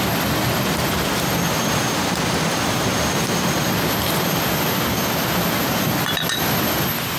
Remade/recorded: recorded